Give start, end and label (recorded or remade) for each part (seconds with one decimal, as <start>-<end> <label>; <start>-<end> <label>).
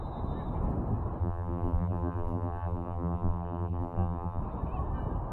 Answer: 0.0-1.2 recorded; 1.2-4.4 remade; 4.4-5.3 recorded